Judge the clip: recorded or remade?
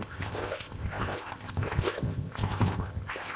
remade